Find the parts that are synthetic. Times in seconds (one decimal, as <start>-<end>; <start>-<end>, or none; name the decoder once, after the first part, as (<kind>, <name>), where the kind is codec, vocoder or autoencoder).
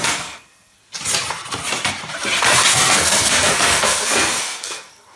0.0-0.8 (codec, SNAC); 2.7-5.2